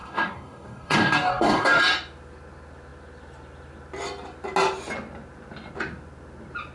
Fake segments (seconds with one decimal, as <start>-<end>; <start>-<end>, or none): 0.0-1.8